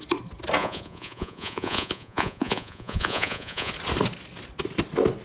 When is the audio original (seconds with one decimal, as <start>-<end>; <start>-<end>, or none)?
0.0-0.6; 3.7-5.2